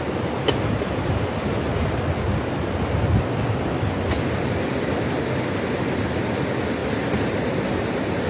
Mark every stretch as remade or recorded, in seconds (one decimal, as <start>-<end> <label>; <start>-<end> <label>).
0.0-6.8 recorded; 6.8-7.4 remade; 7.4-8.3 recorded